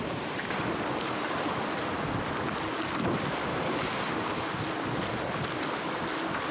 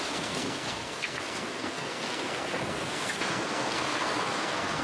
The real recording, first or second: first